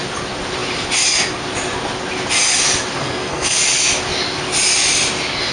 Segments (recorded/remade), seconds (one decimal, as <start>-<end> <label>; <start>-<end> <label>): 0.0-3.0 recorded; 3.0-3.6 remade; 3.6-5.5 recorded